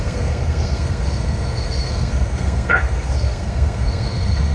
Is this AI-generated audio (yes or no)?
yes